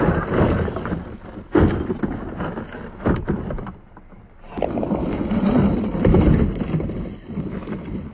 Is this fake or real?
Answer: real